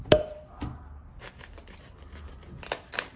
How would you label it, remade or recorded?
recorded